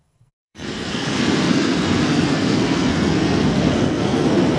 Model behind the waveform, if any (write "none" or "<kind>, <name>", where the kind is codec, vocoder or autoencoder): codec, SNAC